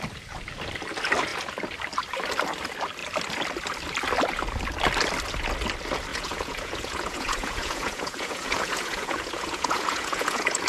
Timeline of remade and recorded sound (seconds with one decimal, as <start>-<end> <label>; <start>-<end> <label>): 0.0-6.1 recorded; 6.1-10.7 remade